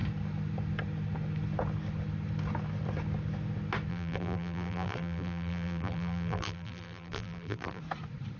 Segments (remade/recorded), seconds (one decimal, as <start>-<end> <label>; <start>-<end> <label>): 0.0-3.9 recorded; 3.9-7.8 remade; 7.8-8.4 recorded